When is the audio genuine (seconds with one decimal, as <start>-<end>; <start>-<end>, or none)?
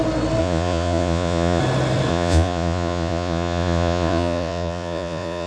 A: 0.0-0.4; 1.6-2.1